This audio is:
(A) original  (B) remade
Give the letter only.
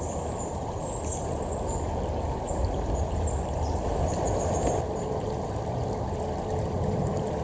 A